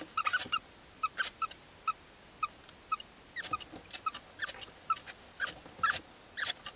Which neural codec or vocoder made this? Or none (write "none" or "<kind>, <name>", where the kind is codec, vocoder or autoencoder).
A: none